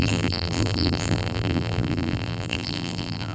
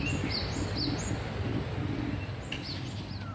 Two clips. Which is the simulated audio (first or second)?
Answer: first